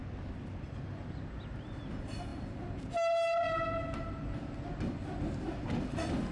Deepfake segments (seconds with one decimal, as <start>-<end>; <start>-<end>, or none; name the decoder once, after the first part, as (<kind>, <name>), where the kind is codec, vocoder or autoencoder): none